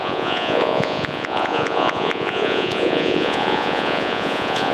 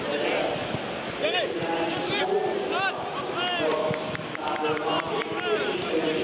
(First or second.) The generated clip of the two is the first